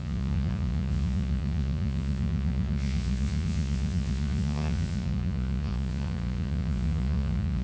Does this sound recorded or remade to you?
remade